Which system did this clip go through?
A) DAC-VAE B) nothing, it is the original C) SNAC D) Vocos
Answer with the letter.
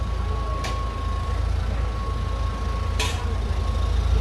B